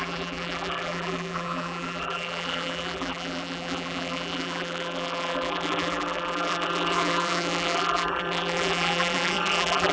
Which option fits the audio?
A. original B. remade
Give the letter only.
B